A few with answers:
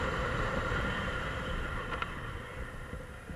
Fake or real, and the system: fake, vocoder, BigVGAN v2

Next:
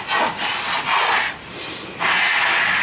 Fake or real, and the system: real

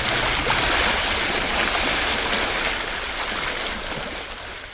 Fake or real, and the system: real